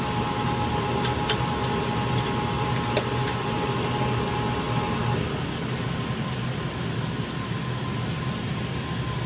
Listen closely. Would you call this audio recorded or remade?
recorded